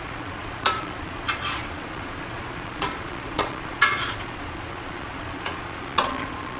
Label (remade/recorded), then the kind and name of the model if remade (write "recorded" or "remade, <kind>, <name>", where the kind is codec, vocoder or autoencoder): remade, vocoder, Vocos